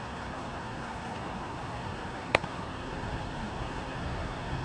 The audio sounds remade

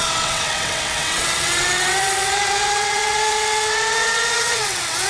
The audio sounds remade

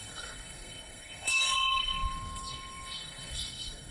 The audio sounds remade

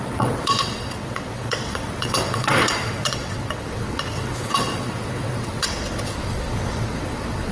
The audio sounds remade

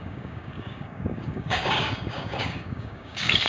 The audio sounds remade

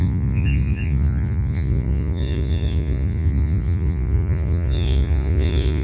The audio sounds remade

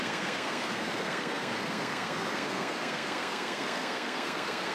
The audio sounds remade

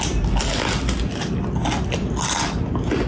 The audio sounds recorded